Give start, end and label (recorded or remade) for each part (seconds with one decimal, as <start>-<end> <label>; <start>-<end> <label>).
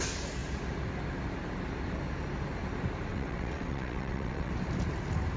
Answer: 0.0-3.1 recorded; 3.1-4.5 remade; 4.5-5.4 recorded